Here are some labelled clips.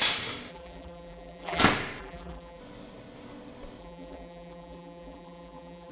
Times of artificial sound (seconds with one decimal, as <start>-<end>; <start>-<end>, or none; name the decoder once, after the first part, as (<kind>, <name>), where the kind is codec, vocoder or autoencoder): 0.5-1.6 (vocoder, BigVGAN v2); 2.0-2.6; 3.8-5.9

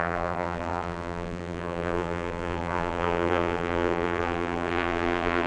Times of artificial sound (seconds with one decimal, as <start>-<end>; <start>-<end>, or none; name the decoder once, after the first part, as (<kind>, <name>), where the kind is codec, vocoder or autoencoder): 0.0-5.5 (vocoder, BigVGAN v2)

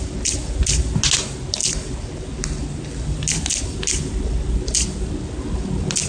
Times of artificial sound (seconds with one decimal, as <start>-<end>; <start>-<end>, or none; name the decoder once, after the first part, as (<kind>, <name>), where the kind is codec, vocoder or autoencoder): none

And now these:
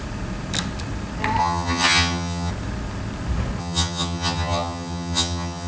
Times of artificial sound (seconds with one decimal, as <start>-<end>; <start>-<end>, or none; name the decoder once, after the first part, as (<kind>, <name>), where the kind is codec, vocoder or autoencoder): 1.4-2.5 (vocoder, HiFi-GAN); 3.6-5.7